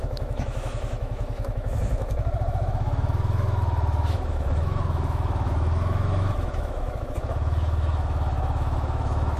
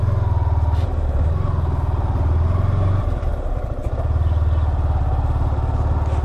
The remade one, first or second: first